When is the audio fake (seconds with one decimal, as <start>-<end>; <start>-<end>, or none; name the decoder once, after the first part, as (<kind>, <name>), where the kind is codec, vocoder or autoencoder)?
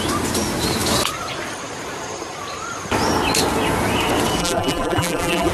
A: 4.4-5.5 (vocoder, BigVGAN v2)